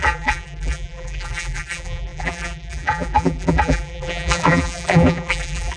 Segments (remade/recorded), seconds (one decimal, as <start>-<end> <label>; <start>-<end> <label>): 0.0-5.8 remade